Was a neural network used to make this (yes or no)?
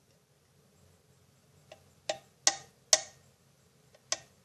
no